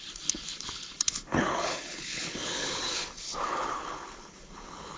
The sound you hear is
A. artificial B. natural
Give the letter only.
A